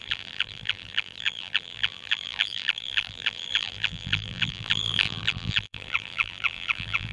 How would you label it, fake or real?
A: fake